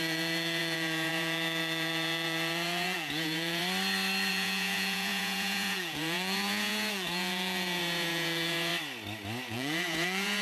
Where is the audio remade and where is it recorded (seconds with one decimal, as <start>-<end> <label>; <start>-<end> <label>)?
0.0-3.6 remade; 3.6-4.3 recorded; 4.3-8.7 remade; 8.7-9.5 recorded; 9.5-10.4 remade